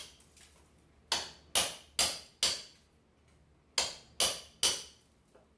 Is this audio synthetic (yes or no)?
no